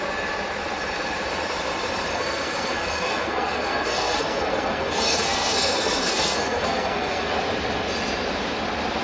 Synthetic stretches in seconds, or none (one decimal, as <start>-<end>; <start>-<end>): 2.1-7.3